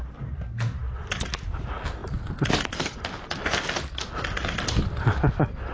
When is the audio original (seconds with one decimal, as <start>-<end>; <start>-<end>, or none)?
0.0-5.7

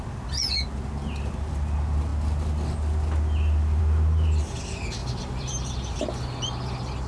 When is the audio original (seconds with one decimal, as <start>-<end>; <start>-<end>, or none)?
0.0-5.0; 6.0-7.1